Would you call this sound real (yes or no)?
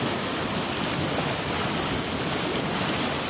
yes